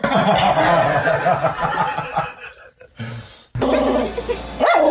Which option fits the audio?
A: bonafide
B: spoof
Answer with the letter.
A